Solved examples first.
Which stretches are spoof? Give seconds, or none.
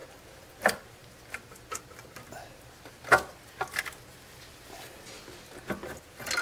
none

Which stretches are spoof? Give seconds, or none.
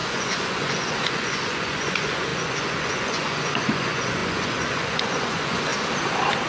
0.0-5.7 (vocoder, Vocos)